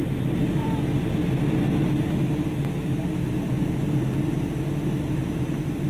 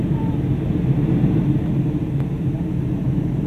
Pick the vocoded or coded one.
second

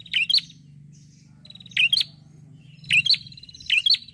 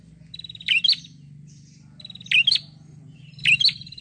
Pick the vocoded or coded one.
second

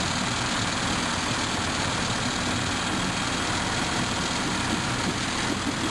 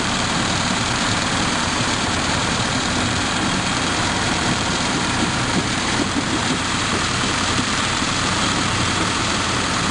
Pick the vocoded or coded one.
second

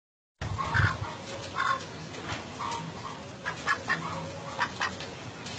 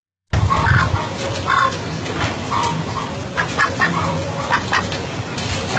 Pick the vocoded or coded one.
second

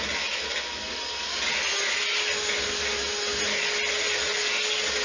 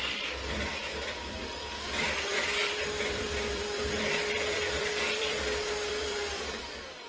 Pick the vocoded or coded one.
second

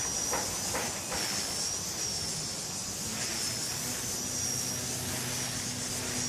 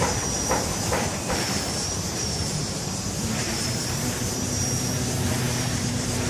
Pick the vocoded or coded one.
second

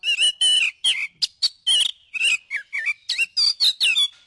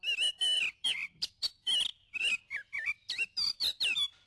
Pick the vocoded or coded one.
second